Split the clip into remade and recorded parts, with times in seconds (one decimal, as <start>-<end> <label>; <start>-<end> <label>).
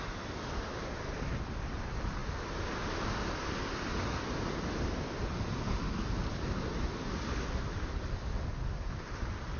0.0-9.6 recorded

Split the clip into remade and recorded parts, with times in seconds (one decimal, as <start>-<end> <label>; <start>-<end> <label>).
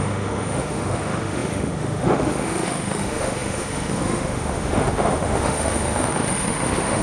0.0-7.0 remade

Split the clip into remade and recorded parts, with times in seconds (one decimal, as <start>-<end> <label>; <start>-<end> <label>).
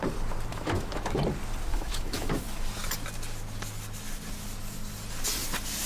0.0-0.5 recorded; 0.5-1.2 remade; 1.2-1.7 recorded; 1.7-2.4 remade; 2.4-5.9 recorded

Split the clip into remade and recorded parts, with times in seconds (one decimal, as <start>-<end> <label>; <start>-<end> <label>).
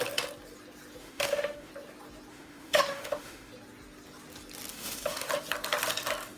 0.0-1.0 recorded; 1.0-1.7 remade; 1.7-2.3 recorded; 2.3-3.5 remade; 3.5-4.7 recorded; 4.7-5.3 remade; 5.3-6.4 recorded